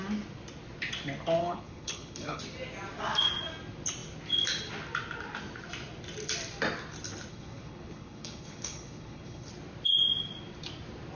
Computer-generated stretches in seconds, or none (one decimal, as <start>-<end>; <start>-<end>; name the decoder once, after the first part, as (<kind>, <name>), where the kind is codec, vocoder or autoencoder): 1.4-2.4 (codec, HILCodec); 7.3-9.5